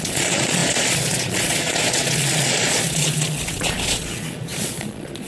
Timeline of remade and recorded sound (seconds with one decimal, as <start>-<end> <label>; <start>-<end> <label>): 0.0-5.3 remade

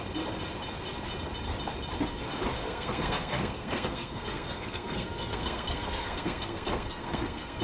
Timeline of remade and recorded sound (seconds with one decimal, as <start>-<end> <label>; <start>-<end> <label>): 0.0-2.6 recorded; 2.6-7.6 remade

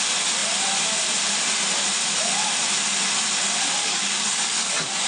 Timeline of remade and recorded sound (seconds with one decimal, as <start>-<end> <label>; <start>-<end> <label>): 0.0-3.8 recorded; 3.8-5.1 remade

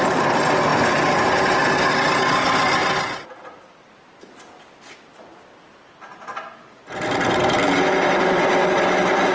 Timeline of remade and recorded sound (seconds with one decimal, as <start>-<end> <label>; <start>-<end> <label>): 0.0-9.3 recorded